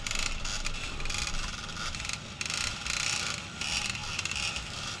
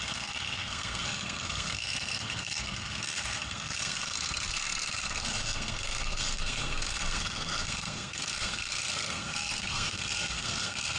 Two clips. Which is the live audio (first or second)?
first